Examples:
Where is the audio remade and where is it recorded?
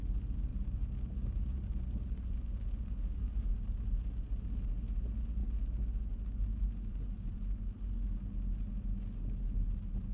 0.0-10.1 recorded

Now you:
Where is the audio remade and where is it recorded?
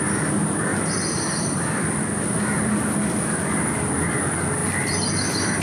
0.0-0.7 recorded; 0.7-4.1 remade; 4.1-4.6 recorded; 4.6-5.6 remade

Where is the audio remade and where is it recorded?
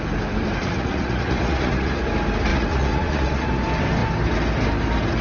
0.0-0.6 recorded; 0.6-2.1 remade; 2.1-2.5 recorded; 2.5-3.6 remade; 3.6-5.2 recorded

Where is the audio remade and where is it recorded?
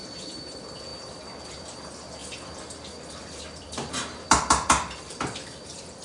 0.0-0.9 remade; 0.9-1.4 recorded; 1.4-6.0 remade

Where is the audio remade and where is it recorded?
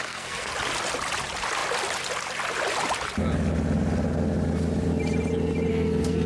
0.0-0.5 remade; 0.5-5.7 recorded; 5.7-6.3 remade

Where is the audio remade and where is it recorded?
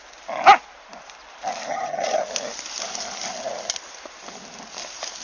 0.0-1.7 recorded; 1.7-2.2 remade; 2.2-5.2 recorded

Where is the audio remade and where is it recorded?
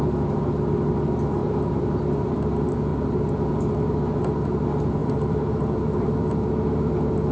0.0-1.4 recorded; 1.4-2.0 remade; 2.0-5.0 recorded; 5.0-6.1 remade; 6.1-7.3 recorded